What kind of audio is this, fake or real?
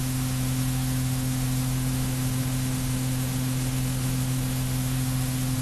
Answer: fake